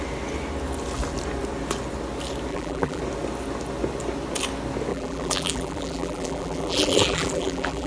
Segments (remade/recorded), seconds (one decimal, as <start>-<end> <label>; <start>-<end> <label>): 0.0-2.5 recorded; 2.5-3.0 remade; 3.0-4.9 recorded; 4.9-7.9 remade

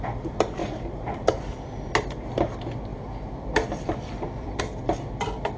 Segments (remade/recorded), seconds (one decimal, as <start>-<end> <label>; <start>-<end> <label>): 0.0-0.6 recorded; 0.6-1.6 remade; 1.6-5.6 recorded

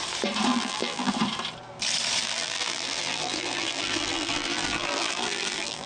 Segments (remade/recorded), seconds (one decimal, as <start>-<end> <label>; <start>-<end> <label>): 0.0-0.5 recorded; 0.5-1.1 remade; 1.1-2.2 recorded; 2.2-5.9 remade